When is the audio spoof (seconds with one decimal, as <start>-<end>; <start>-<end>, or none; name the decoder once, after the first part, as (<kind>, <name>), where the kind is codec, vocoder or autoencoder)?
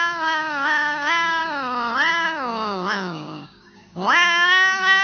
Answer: 0.0-1.4 (codec, DAC); 2.1-5.0